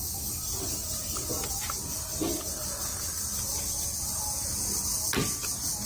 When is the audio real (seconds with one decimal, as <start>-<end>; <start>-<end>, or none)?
0.0-5.9